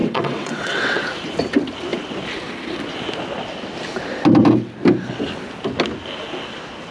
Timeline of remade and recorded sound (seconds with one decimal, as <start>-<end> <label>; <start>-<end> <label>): 0.0-1.0 remade; 1.0-6.9 recorded

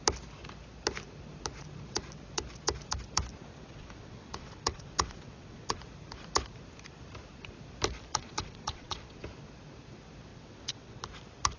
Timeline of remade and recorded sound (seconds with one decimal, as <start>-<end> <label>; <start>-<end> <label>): 0.0-3.5 recorded; 3.5-5.8 remade; 5.8-8.1 recorded; 8.1-9.2 remade; 9.2-10.3 recorded; 10.3-11.0 remade; 11.0-11.6 recorded

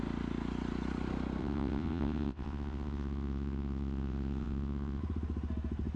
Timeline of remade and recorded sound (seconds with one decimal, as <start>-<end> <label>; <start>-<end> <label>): 0.0-1.4 recorded; 1.4-5.0 remade; 5.0-6.0 recorded

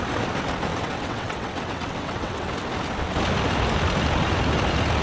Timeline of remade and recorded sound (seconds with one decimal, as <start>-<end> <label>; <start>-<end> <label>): 0.0-0.7 recorded; 0.7-2.5 remade; 2.5-5.0 recorded

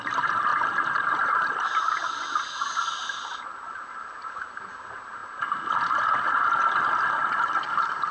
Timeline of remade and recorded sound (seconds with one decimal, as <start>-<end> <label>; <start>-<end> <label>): 0.0-8.1 recorded

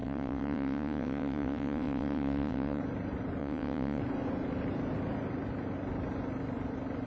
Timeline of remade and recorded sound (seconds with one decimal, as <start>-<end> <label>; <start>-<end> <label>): 0.0-2.8 remade; 2.8-3.4 recorded; 3.4-4.0 remade; 4.0-7.1 recorded

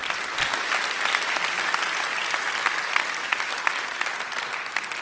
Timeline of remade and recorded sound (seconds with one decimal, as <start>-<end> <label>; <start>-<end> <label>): 0.0-5.0 recorded

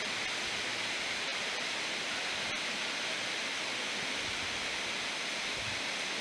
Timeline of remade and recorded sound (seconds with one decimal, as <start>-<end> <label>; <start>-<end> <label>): 0.0-6.2 recorded